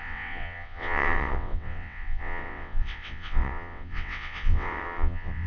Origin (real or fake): fake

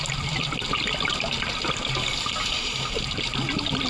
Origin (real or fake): real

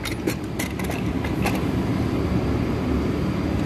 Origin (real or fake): real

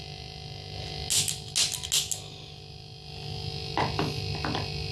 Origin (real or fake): real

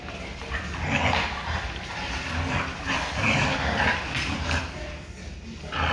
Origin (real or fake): real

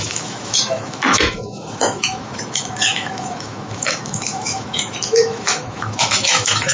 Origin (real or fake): fake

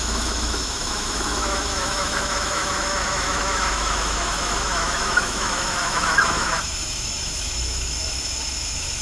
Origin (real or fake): fake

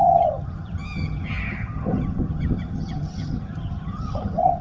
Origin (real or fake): fake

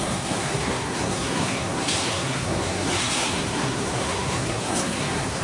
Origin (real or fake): fake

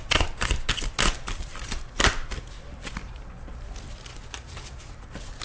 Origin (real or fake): real